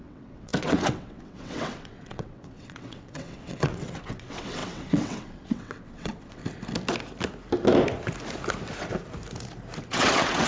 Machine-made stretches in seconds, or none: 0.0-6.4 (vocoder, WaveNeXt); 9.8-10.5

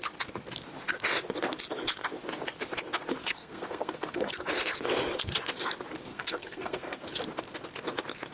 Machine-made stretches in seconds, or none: 3.2-4.3 (codec, SNAC); 6.1-7.0

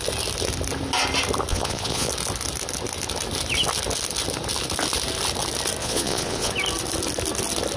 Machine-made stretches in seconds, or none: 1.5-2.1 (vocoder, Vocos); 5.8-6.5

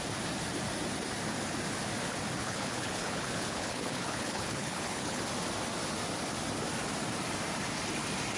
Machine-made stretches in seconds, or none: 2.4-5.2 (codec, HILCodec)

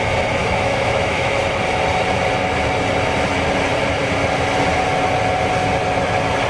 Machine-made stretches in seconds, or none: 0.4-1.4 (autoencoder, DAC-VAE)